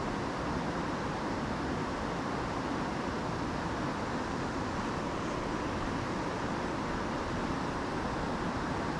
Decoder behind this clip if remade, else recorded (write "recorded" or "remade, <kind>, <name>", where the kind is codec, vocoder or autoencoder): recorded